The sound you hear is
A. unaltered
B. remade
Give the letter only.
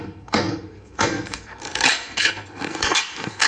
B